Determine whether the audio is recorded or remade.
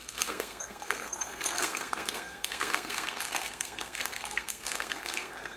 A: remade